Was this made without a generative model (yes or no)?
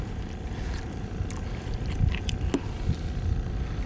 yes